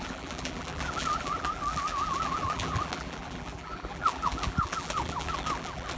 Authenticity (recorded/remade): remade